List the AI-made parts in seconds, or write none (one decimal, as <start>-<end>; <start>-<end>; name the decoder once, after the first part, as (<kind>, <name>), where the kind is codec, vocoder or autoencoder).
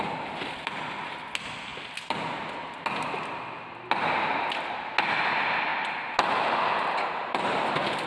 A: none